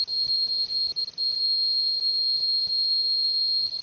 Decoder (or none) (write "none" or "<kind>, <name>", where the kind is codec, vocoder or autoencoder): none